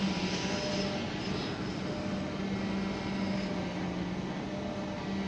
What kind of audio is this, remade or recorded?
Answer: recorded